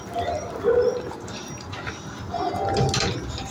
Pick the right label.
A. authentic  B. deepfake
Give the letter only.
A